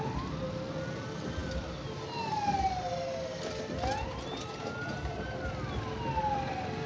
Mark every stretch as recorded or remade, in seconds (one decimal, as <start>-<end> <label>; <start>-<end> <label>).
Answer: 0.0-6.9 recorded